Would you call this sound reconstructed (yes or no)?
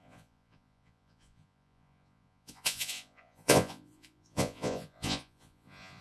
yes